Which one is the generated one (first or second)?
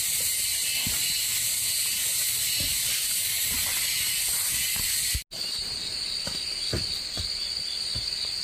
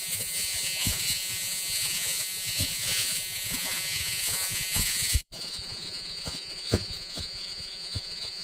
second